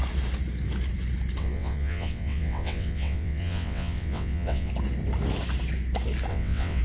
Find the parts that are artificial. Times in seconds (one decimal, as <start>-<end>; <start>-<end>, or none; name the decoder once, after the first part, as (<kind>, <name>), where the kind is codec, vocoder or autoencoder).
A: 1.4-4.7 (vocoder, WaveNeXt); 6.3-6.8